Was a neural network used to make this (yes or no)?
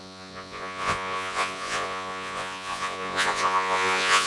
yes